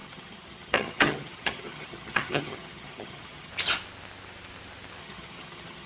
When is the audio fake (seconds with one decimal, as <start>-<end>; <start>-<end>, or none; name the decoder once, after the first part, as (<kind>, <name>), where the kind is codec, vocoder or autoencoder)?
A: 0.0-3.5 (vocoder, HiFi-GAN); 5.0-5.9